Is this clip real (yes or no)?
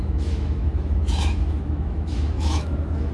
no